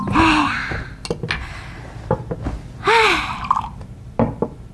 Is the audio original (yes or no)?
yes